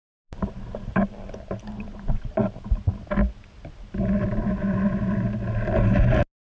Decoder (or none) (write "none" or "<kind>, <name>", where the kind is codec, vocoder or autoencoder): none